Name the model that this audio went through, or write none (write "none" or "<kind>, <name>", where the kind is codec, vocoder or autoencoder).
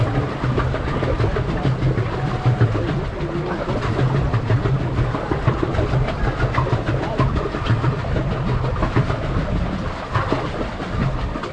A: none